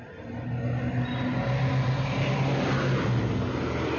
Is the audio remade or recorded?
recorded